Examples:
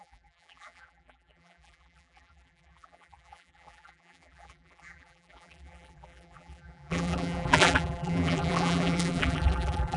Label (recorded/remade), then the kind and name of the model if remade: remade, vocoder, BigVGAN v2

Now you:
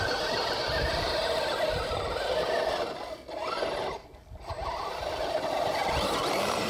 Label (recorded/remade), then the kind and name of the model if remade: recorded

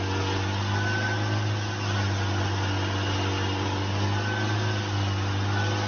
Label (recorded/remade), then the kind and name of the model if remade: recorded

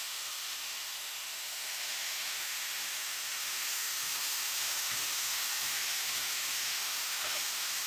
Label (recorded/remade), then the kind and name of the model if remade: remade, autoencoder, DAC-VAE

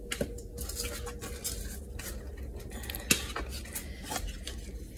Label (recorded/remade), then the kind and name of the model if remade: recorded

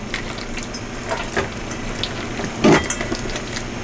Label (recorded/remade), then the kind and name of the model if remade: recorded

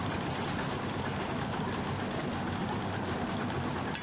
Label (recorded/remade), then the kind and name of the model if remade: recorded